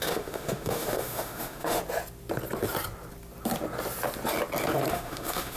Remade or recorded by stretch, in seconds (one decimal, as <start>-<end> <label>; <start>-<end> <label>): 0.0-1.8 remade; 1.8-4.9 recorded; 4.9-5.6 remade